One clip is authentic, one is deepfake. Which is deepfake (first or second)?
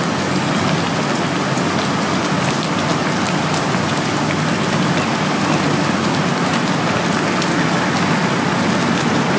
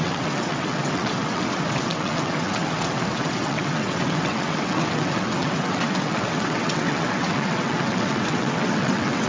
second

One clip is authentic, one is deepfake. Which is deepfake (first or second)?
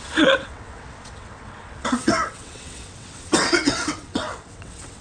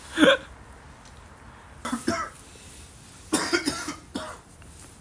first